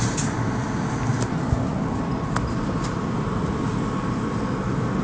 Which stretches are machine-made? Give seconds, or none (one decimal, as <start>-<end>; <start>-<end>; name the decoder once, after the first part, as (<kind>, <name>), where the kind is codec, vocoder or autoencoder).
none